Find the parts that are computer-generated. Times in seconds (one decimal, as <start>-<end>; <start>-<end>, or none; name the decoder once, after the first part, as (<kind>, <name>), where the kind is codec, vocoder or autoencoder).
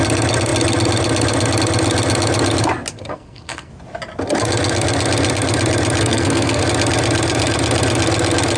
2.9-3.7 (codec, SNAC); 6.0-6.6